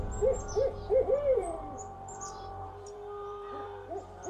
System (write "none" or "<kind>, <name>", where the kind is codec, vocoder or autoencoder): vocoder, BigVGAN v2